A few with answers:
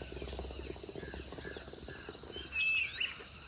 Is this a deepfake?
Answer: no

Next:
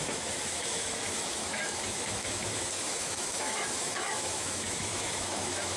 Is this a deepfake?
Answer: yes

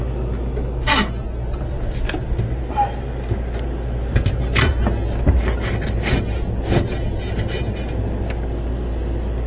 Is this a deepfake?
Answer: no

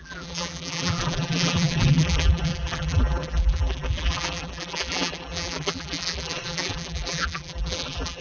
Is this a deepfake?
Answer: yes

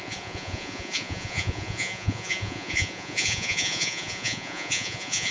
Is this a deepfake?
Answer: yes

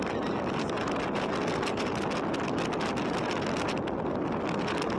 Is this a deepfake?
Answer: no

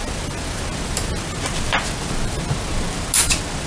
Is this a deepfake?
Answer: no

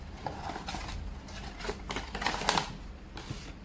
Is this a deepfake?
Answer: no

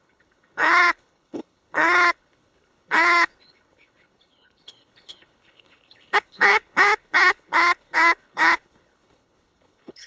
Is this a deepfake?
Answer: yes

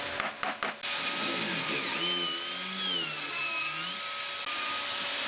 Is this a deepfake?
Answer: no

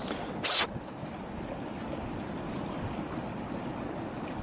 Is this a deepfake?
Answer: no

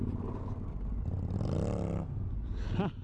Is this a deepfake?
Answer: no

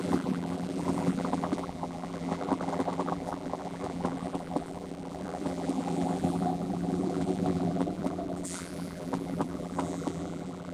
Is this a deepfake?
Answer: yes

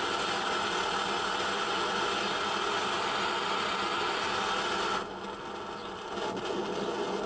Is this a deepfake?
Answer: no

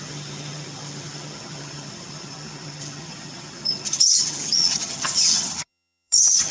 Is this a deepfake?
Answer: yes